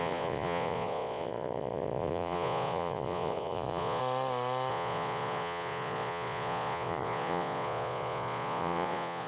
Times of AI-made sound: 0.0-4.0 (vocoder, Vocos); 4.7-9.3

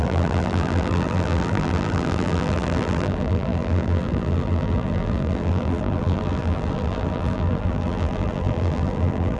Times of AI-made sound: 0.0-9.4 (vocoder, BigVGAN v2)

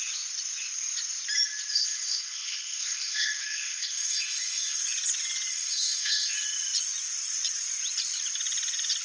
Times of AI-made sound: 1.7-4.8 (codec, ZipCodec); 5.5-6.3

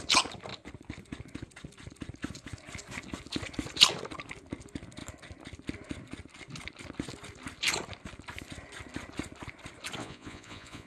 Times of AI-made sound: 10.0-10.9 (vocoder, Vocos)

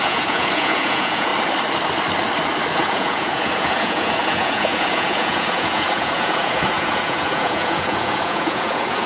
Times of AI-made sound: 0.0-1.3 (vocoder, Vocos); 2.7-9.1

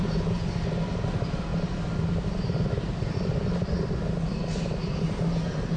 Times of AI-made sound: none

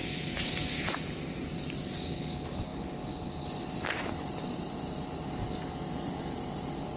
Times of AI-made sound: none